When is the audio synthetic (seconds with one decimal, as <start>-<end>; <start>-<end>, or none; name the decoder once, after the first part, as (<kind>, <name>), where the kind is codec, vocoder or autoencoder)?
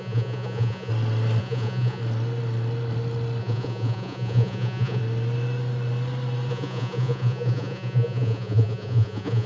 0.0-0.9 (vocoder, Vocos); 1.4-2.0; 3.4-5.0; 6.5-9.5